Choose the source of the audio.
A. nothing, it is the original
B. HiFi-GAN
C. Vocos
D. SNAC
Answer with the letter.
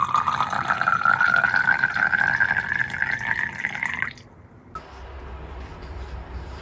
A